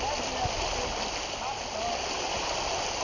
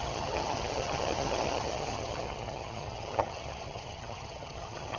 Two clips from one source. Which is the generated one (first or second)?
second